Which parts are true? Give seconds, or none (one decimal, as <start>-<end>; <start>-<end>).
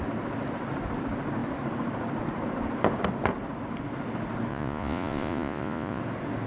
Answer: 0.0-4.5; 6.0-6.5